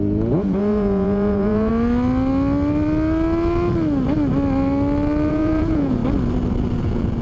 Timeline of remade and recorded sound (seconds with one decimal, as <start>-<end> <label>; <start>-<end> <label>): 0.0-1.7 remade; 1.7-5.3 recorded; 5.3-6.0 remade; 6.0-6.8 recorded; 6.8-7.2 remade